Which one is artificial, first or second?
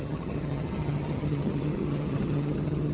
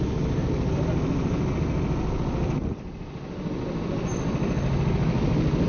first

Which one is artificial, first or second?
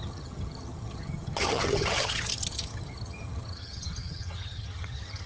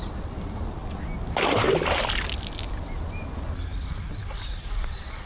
first